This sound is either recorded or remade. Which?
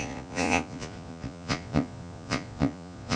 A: remade